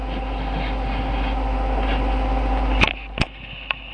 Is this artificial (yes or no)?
no